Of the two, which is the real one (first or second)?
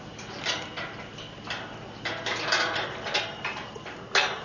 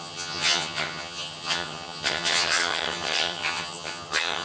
first